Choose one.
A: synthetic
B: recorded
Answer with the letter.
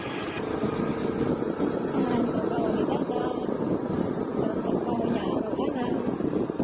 A